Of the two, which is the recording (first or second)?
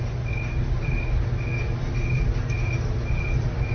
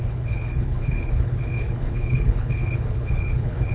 first